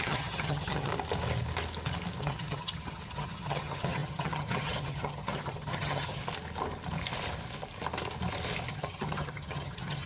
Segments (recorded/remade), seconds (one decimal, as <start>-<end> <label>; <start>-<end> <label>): 0.0-0.9 remade; 0.9-2.2 recorded; 2.2-6.2 remade; 6.2-8.7 recorded; 8.7-10.1 remade